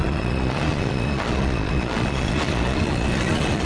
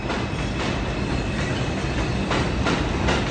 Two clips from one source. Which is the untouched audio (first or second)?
second